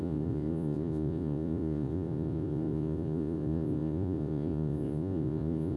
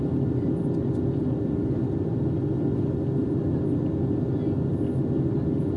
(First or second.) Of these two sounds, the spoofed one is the first